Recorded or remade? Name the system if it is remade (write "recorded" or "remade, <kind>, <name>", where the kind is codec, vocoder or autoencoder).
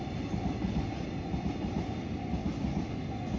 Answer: recorded